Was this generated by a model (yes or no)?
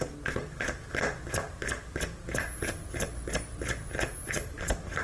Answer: no